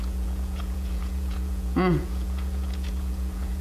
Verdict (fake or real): fake